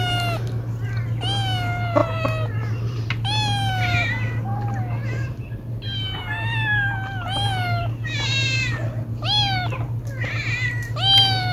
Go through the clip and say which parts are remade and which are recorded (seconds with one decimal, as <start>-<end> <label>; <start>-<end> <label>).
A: 0.0-2.0 recorded; 2.0-3.1 remade; 3.1-11.5 recorded